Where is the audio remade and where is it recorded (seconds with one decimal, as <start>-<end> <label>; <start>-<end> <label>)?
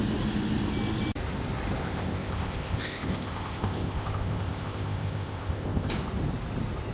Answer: 0.0-1.8 recorded; 1.8-5.9 remade; 5.9-6.9 recorded